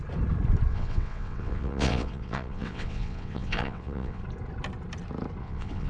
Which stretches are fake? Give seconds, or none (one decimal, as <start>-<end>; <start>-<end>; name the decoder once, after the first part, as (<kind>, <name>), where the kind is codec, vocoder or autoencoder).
0.7-4.2 (vocoder, WaveNeXt); 5.4-5.9